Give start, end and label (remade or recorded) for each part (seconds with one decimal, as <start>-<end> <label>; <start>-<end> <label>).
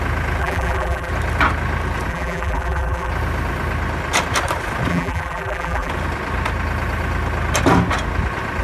0.0-0.4 recorded; 0.4-1.1 remade; 1.1-2.1 recorded; 2.1-3.1 remade; 3.1-4.9 recorded; 4.9-5.9 remade; 5.9-8.6 recorded